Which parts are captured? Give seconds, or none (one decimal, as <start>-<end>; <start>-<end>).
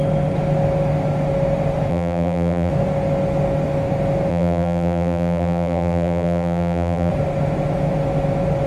0.0-1.9; 2.7-4.3; 7.1-8.7